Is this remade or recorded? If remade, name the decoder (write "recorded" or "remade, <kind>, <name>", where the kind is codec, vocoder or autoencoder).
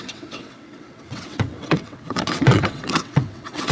remade, vocoder, WaveNeXt